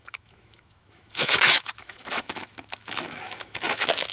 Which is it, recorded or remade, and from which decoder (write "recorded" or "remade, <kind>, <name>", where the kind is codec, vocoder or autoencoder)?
remade, autoencoder, DAC-VAE